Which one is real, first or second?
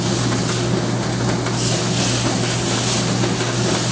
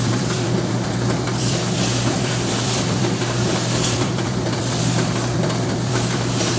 first